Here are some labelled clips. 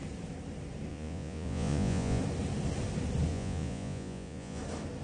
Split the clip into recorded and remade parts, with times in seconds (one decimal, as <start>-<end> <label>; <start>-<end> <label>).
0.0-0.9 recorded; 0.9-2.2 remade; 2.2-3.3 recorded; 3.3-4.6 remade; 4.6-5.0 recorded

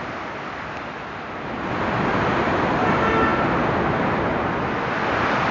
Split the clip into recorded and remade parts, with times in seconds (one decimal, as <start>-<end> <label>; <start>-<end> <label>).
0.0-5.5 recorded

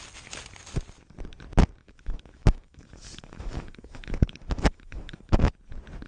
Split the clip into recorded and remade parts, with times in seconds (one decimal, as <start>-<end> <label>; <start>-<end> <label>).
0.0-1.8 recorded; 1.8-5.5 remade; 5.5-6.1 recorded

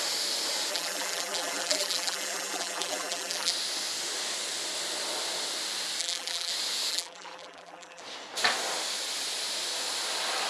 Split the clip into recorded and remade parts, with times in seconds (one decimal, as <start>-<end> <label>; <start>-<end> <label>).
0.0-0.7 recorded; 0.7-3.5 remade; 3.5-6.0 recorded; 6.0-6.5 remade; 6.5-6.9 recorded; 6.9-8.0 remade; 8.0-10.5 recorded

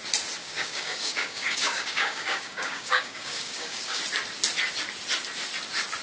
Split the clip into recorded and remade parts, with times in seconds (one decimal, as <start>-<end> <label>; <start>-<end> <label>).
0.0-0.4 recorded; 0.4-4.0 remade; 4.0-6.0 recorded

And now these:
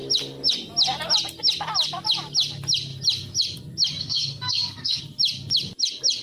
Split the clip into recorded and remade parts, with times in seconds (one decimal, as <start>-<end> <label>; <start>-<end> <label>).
0.0-4.0 recorded; 4.0-5.0 remade; 5.0-6.2 recorded